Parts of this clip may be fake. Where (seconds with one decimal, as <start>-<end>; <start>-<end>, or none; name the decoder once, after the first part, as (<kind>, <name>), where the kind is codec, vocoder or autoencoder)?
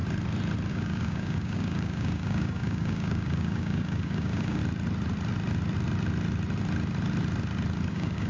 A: 0.7-4.6 (codec, DAC); 7.9-8.3